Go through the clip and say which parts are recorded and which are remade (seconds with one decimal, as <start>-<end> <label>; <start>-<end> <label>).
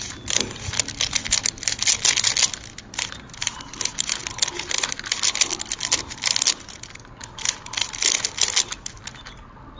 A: 0.0-9.8 recorded